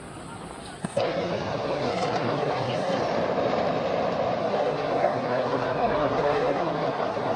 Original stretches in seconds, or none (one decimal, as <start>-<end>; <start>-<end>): 0.0-0.8; 3.0-4.4